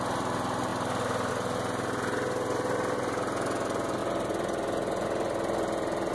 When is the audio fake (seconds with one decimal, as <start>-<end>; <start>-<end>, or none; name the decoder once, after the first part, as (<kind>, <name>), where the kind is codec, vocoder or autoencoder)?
none